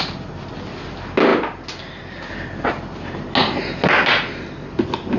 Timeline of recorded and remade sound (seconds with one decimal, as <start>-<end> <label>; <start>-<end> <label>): 0.0-5.2 recorded